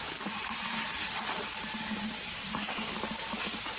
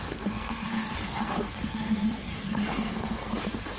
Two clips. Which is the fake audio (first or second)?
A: second